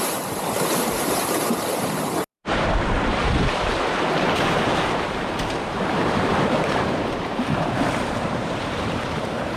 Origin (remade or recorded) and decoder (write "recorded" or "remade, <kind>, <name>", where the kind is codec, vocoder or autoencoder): remade, vocoder, BigVGAN v2